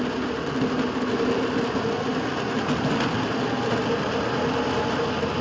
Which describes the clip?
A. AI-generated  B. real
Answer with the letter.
B